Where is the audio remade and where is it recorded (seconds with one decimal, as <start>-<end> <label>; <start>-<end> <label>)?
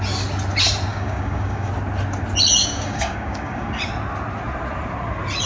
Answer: 0.0-0.9 recorded; 0.9-1.7 remade; 1.7-2.6 recorded; 2.6-3.7 remade; 3.7-5.5 recorded